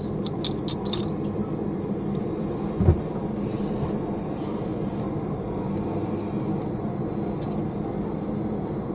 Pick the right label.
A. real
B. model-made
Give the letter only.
A